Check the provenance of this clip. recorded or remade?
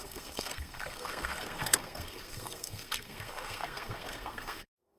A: remade